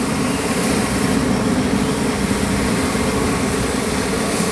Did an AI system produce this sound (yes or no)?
no